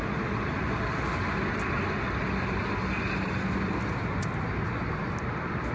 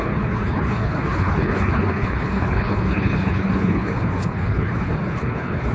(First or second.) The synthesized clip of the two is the second